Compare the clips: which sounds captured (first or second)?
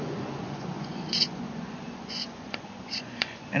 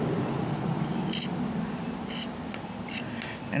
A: second